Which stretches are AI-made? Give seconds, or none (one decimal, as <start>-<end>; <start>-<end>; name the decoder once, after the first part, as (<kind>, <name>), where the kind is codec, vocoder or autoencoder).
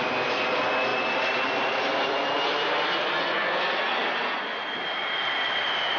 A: none